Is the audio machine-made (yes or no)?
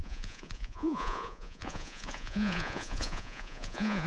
yes